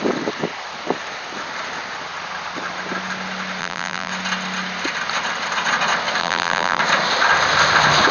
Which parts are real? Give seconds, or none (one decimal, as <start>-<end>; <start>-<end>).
0.0-3.6; 4.1-6.2; 6.8-8.1